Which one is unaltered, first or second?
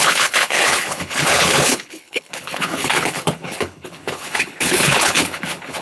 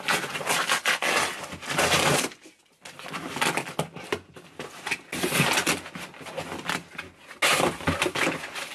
second